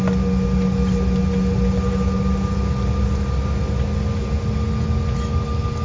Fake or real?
real